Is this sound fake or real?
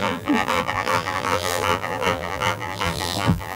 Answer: fake